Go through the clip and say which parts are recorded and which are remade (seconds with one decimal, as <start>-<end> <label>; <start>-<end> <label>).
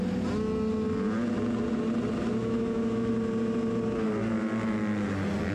0.0-2.4 recorded; 2.4-3.1 remade; 3.1-5.5 recorded